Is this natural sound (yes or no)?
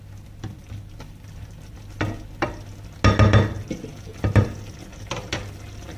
yes